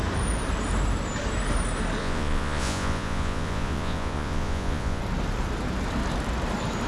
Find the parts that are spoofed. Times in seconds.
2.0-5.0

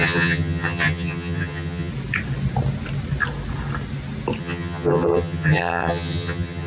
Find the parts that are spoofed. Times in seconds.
0.0-1.9; 4.4-6.7

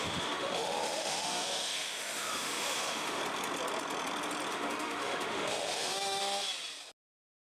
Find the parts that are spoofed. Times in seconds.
0.0-3.2; 4.5-6.2; 7.0-7.4

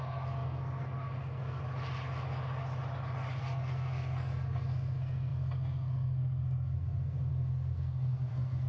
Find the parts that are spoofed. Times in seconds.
0.0-1.6; 3.4-8.7

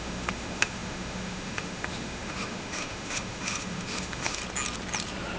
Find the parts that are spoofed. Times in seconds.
0.0-4.4